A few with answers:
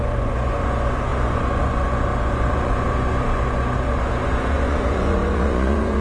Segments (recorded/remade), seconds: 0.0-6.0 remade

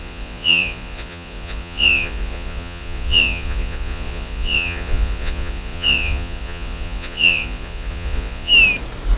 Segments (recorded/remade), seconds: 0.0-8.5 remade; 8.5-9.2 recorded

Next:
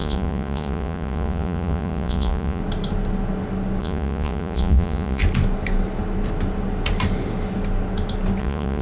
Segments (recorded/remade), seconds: 0.0-2.6 remade; 2.6-3.8 recorded; 3.8-5.2 remade; 5.2-8.4 recorded; 8.4-8.8 remade